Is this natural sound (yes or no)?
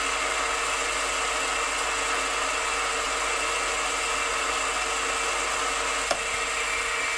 yes